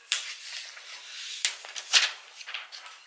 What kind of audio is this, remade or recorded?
recorded